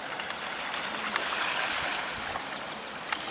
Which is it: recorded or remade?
recorded